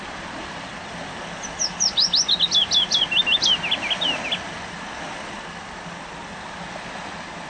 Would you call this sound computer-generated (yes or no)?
no